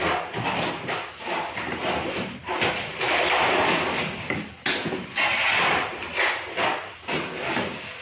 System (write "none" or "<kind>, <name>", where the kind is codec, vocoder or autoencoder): none